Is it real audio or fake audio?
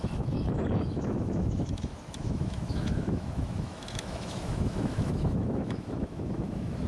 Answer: fake